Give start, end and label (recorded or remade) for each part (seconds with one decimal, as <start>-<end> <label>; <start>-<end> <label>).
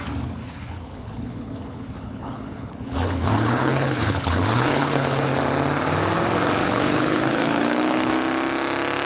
0.0-0.4 recorded; 0.4-5.3 remade; 5.3-6.6 recorded; 6.6-8.1 remade; 8.1-9.1 recorded